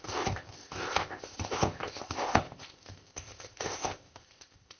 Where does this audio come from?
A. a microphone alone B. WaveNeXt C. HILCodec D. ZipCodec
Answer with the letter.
D